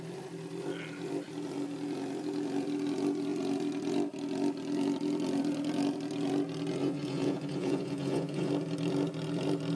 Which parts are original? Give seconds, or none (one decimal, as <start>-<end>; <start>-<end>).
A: 0.0-6.8; 8.5-9.8